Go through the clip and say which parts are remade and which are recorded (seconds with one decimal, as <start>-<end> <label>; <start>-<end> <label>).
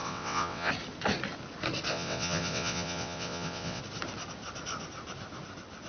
0.0-0.7 remade; 0.7-1.9 recorded; 1.9-3.8 remade; 3.8-5.9 recorded